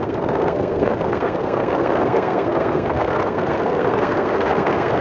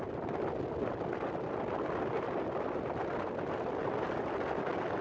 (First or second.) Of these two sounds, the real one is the second